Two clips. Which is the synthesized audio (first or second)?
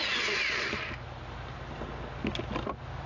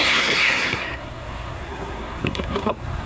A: second